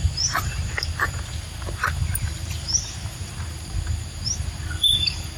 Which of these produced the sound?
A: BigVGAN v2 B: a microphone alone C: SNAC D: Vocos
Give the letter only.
A